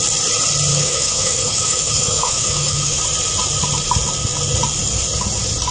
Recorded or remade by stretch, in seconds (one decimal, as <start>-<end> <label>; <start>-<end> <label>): 0.0-0.7 recorded; 0.7-3.0 remade; 3.0-5.7 recorded